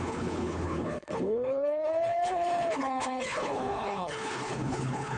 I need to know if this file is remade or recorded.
remade